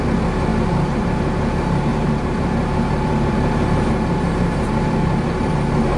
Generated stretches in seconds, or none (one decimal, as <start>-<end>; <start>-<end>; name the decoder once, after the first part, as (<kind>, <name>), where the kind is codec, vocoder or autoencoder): 0.5-1.1 (vocoder, BigVGAN v2); 1.9-5.5